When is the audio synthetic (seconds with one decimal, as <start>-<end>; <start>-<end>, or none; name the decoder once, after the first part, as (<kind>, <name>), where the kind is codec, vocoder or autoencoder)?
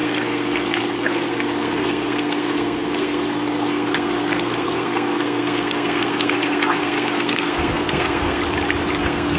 0.0-8.4 (codec, SNAC); 9.0-9.4